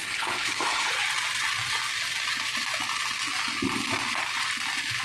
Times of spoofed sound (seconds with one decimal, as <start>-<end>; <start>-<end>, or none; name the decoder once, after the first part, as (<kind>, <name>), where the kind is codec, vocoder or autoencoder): 0.0-0.9 (codec, HILCodec)